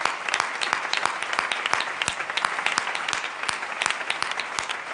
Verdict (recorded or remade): recorded